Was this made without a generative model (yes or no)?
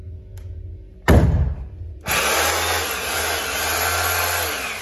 yes